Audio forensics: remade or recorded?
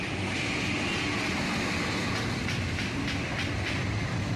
recorded